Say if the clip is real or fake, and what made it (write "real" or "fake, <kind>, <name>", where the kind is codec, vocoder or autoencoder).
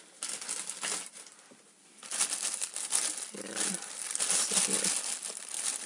real